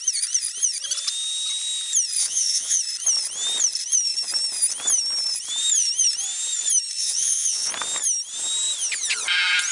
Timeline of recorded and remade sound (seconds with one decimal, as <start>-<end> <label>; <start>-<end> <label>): 0.0-2.2 recorded; 2.2-2.8 remade; 2.8-7.0 recorded; 7.0-7.7 remade; 7.7-9.7 recorded

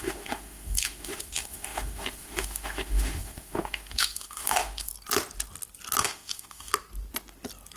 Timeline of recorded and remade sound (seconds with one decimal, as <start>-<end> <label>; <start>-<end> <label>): 0.0-4.9 remade; 4.9-6.0 recorded; 6.0-6.7 remade; 6.7-7.8 recorded

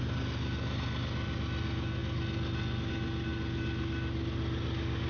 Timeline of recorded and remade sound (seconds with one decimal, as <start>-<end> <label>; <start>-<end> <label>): 0.0-5.1 recorded

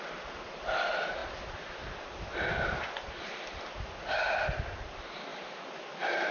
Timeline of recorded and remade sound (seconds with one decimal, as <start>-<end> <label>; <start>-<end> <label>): 0.0-6.3 recorded

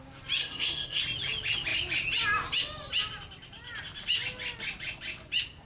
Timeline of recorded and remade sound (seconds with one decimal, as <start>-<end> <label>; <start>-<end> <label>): 0.0-0.4 recorded; 0.4-1.0 remade; 1.0-5.7 recorded

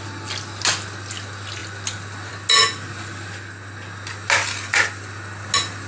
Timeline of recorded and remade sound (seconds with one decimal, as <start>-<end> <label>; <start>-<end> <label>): 0.0-5.9 recorded